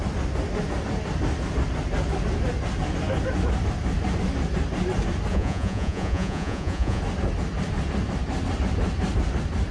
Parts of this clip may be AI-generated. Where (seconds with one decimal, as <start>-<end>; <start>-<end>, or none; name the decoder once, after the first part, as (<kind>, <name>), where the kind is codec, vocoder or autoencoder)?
5.3-7.0 (vocoder, Vocos)